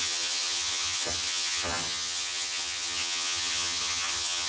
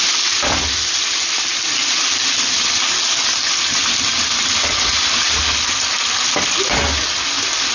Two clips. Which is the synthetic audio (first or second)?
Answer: first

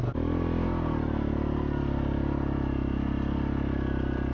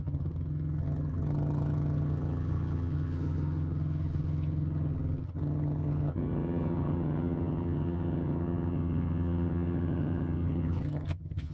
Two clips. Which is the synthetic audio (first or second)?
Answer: second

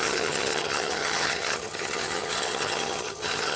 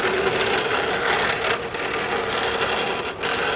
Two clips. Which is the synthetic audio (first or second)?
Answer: first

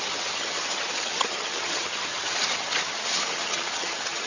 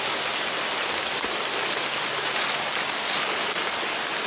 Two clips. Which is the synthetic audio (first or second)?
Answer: first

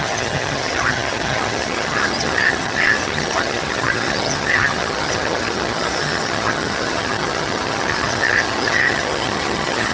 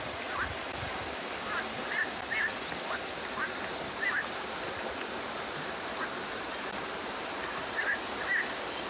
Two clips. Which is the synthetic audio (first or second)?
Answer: first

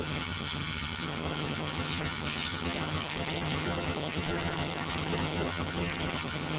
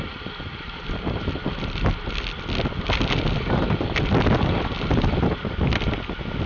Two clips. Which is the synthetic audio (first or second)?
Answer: first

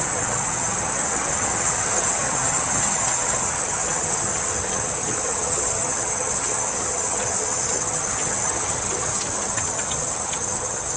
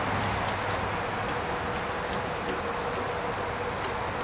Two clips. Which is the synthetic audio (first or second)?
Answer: first